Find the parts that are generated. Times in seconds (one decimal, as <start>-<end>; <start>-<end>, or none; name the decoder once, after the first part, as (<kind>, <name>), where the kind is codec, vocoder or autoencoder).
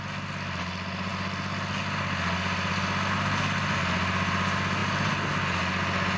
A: none